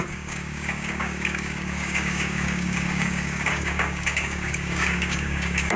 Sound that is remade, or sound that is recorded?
remade